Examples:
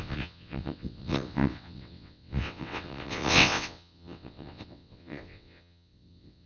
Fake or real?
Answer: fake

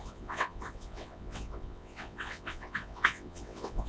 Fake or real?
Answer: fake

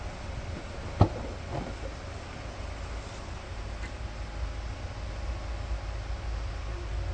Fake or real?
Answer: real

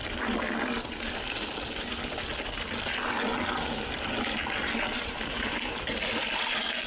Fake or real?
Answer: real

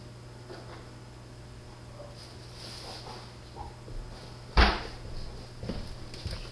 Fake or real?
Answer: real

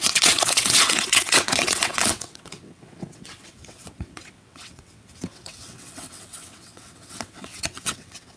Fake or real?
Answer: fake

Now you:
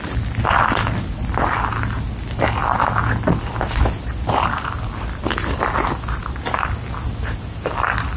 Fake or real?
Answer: real